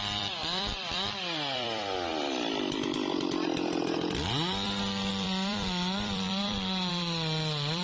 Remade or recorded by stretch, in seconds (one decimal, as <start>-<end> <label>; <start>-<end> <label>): 0.0-7.8 remade